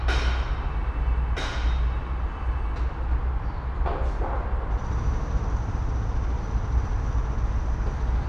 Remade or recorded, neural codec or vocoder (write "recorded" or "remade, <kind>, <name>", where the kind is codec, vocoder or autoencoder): recorded